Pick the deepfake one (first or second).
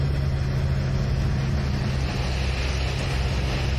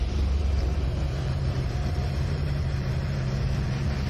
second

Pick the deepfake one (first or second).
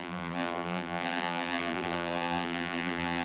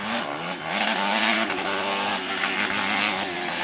first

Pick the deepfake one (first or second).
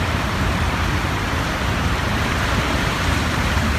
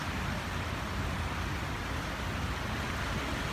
first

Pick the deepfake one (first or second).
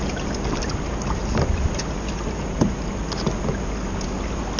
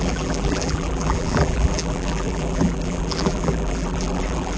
second